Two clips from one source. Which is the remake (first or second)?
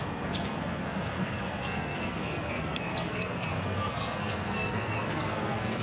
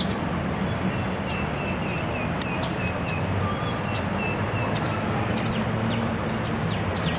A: first